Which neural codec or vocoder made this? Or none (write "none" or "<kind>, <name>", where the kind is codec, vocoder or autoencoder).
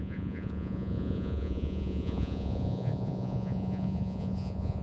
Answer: vocoder, Vocos